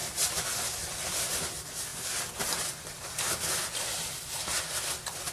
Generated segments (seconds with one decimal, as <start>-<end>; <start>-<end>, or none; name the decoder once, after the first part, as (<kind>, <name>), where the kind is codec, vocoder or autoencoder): none